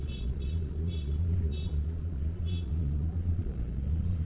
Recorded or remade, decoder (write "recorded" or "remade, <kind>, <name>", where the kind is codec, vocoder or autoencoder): remade, vocoder, Vocos